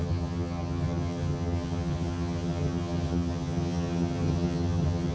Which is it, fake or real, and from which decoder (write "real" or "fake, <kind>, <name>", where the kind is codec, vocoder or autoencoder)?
fake, vocoder, HiFi-GAN